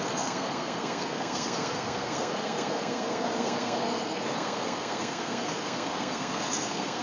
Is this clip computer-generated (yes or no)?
yes